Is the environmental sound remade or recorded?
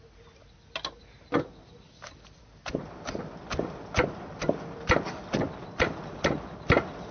recorded